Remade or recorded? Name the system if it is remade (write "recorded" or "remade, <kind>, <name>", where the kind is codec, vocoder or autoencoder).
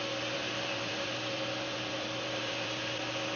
remade, vocoder, BigVGAN v2